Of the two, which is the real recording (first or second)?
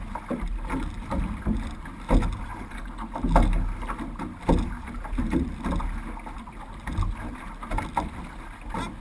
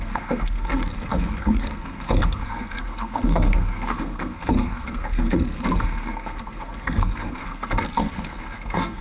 first